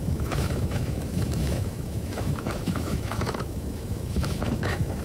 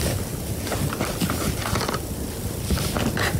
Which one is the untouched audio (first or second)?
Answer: second